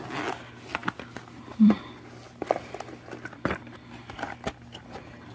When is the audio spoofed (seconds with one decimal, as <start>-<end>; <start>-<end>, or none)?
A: 0.0-5.3